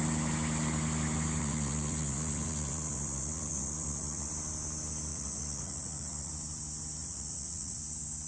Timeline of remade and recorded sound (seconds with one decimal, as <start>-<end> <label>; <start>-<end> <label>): 0.0-1.4 recorded; 1.4-4.3 remade; 4.3-5.1 recorded; 5.1-6.3 remade; 6.3-7.0 recorded; 7.0-7.8 remade; 7.8-8.3 recorded